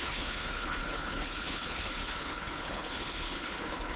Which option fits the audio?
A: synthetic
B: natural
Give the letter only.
A